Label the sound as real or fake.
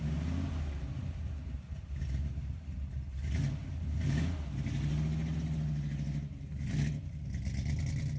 real